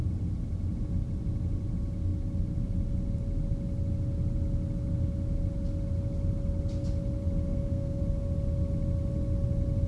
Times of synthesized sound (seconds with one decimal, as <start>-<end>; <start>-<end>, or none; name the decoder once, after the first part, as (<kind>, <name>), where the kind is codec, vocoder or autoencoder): 7.5-8.0 (codec, SNAC)